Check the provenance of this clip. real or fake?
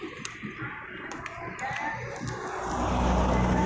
real